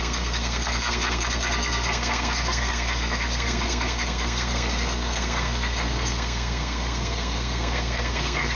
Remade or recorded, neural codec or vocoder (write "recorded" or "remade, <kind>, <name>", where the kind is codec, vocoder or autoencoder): remade, codec, SNAC